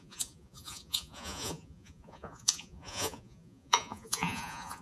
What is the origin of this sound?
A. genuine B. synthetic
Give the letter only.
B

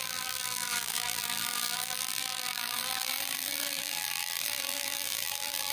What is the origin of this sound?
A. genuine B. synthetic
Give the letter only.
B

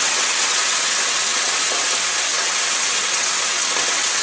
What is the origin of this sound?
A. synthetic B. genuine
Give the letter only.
A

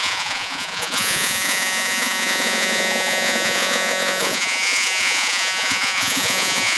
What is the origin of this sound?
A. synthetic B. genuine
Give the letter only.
A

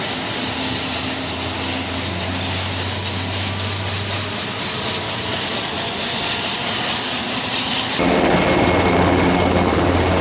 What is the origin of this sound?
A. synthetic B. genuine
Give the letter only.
B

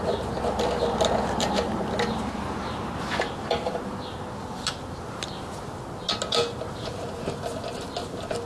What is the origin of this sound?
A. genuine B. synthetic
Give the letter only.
A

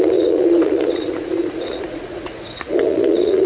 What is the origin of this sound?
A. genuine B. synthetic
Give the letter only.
B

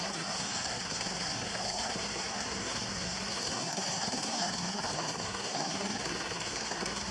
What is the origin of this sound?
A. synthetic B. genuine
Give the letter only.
A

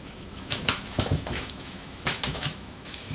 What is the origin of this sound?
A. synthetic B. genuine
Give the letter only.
A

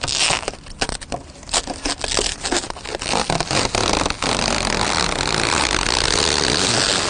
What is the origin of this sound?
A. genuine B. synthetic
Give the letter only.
A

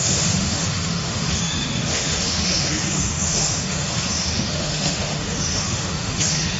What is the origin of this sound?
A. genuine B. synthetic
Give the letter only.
B